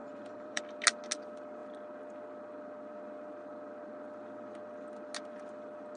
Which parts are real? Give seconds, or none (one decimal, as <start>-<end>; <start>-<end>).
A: 0.6-6.0